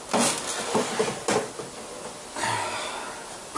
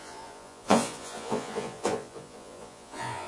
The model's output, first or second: second